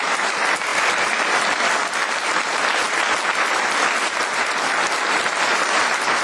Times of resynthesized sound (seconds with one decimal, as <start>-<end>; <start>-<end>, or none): 0.0-0.7; 4.4-6.2

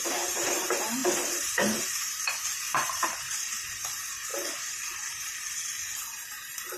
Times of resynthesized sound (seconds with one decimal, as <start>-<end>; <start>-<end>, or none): 0.0-6.8

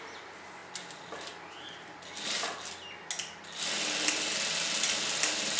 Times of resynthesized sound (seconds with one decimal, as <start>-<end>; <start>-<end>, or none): none

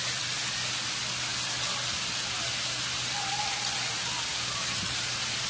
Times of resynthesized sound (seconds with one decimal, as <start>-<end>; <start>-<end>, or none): none

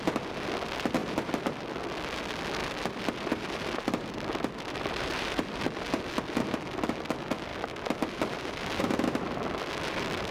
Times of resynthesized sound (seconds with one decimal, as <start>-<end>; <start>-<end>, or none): 1.0-1.8; 2.6-5.6